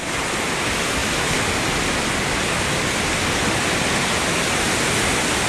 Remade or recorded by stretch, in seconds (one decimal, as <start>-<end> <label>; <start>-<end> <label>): 0.0-5.5 recorded